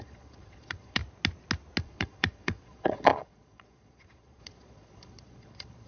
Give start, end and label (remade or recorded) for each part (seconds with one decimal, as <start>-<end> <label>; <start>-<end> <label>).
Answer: 0.0-1.0 remade; 1.0-1.8 recorded; 1.8-5.9 remade